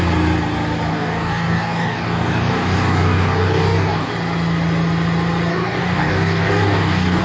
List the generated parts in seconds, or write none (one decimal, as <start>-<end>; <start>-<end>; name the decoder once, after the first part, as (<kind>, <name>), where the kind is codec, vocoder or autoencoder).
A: 0.9-4.1 (codec, DAC); 5.5-7.2